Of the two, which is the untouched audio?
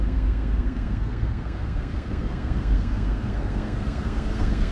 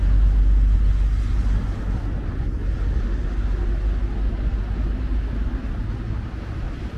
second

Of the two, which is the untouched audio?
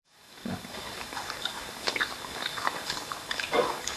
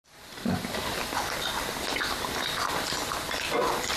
second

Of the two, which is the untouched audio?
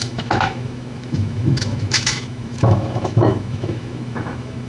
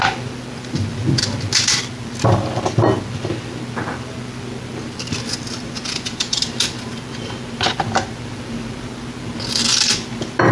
second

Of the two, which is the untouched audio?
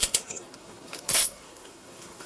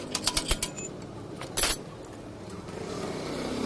second